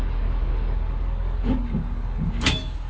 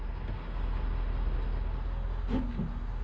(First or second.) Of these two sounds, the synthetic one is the first